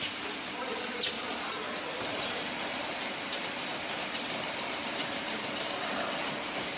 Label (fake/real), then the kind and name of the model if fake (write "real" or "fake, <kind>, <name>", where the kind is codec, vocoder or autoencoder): fake, vocoder, BigVGAN v2